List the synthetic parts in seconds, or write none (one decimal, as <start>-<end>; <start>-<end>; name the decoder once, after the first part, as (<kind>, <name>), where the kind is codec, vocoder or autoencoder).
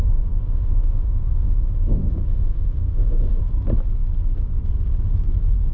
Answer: 0.0-3.4 (autoencoder, DAC-VAE)